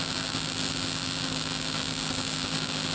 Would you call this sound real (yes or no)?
yes